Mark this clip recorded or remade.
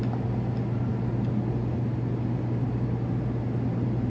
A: recorded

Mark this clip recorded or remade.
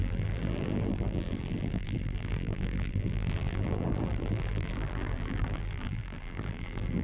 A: remade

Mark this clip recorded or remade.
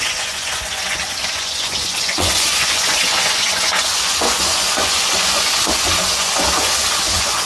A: remade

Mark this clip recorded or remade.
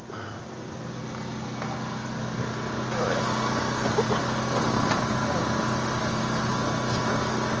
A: recorded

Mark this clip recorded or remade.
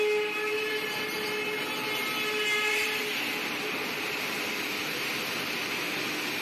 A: recorded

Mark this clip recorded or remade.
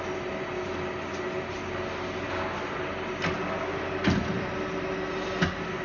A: recorded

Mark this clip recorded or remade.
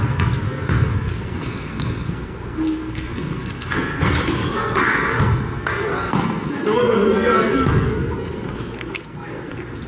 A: remade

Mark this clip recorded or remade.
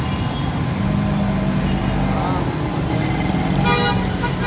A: recorded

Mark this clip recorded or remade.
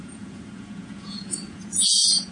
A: remade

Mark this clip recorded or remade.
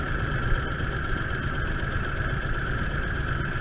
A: recorded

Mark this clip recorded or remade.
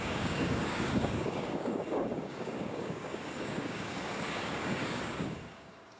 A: remade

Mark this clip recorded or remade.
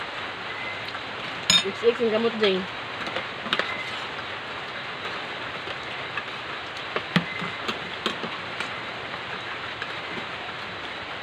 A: recorded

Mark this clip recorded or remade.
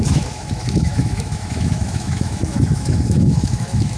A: remade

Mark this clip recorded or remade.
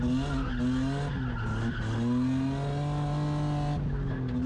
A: recorded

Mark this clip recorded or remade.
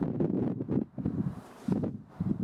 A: remade